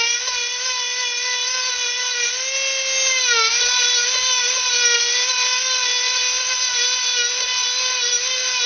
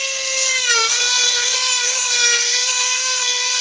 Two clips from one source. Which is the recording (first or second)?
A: first